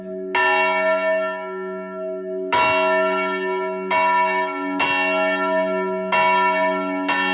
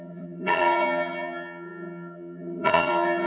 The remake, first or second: second